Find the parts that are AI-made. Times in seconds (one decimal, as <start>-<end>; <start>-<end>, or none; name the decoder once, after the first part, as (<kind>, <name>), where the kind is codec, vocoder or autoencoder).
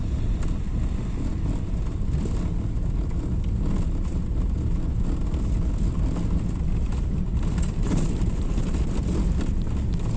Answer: 7.3-9.2 (vocoder, BigVGAN v2)